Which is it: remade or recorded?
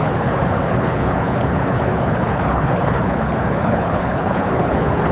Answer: remade